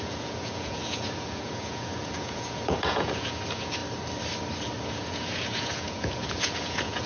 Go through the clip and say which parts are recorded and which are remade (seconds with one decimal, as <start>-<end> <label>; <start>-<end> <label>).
0.0-3.8 remade; 3.8-4.8 recorded; 4.8-7.1 remade